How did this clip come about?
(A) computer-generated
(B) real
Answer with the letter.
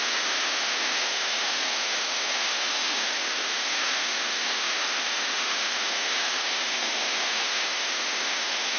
A